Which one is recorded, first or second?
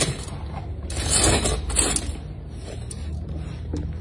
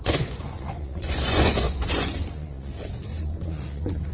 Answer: first